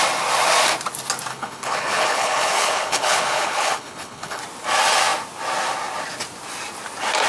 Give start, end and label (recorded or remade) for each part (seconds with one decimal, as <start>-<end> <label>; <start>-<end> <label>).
0.0-1.3 recorded; 1.3-4.4 remade; 4.4-7.3 recorded